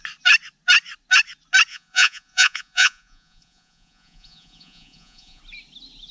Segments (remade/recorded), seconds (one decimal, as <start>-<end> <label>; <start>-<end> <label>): 0.0-1.7 recorded; 1.7-5.4 remade; 5.4-6.1 recorded